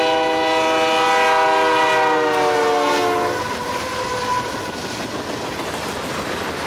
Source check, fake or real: real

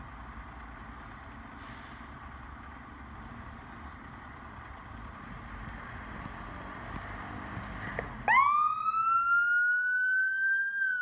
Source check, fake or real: real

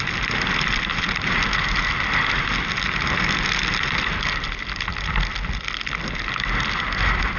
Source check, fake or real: real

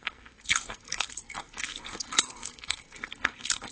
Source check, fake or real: fake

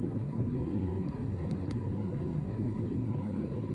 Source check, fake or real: fake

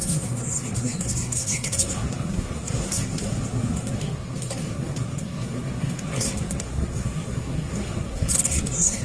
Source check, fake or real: fake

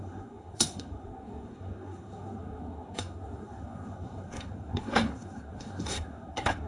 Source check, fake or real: fake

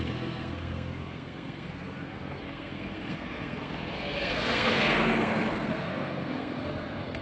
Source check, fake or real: fake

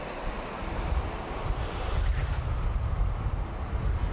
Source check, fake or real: real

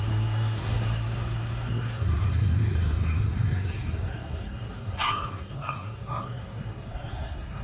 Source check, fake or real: fake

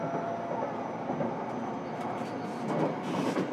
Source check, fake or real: real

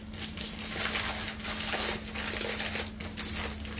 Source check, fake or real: real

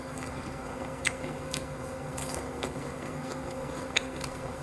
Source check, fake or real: fake